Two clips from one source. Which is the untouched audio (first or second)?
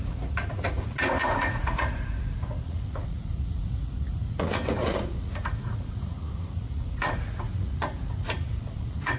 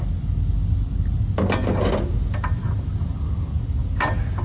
second